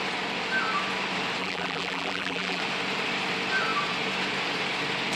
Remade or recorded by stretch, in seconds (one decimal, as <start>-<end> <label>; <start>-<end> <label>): 0.0-1.4 recorded; 1.4-2.6 remade; 2.6-5.2 recorded